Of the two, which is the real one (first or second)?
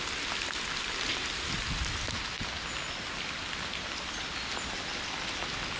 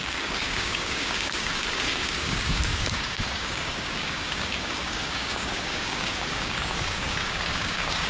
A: first